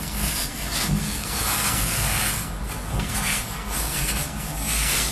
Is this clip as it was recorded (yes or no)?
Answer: no